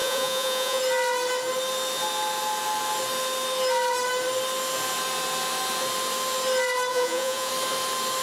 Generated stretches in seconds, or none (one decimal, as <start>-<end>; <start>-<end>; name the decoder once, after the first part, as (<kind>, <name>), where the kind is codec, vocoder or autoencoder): 0.0-0.8 (vocoder, Vocos); 6.9-7.5